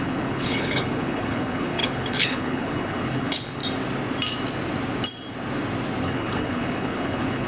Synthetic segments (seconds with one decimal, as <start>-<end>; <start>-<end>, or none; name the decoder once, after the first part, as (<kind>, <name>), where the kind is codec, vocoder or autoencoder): 0.0-3.6 (codec, HILCodec); 6.0-7.5